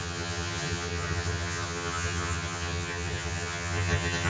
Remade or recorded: remade